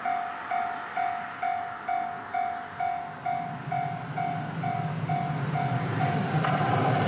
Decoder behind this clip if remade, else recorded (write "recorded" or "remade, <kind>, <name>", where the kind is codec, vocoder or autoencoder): recorded